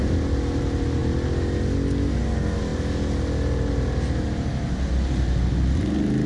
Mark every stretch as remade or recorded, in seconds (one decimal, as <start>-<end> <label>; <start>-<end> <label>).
0.0-6.3 recorded